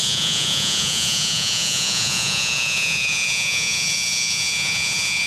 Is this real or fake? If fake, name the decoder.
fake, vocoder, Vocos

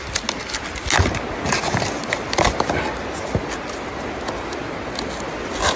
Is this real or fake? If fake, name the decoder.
real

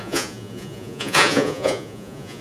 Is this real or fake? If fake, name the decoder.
fake, vocoder, Vocos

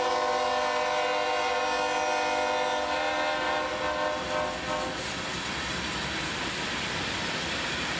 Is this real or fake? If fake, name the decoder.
real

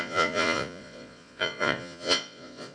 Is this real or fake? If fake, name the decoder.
fake, vocoder, Vocos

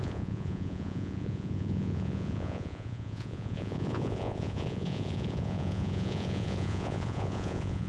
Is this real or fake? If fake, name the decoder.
fake, vocoder, Vocos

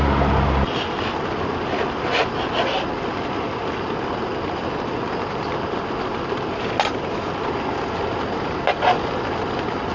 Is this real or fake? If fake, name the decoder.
real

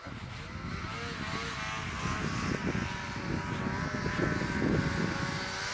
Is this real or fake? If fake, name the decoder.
real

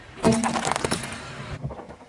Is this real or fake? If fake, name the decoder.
real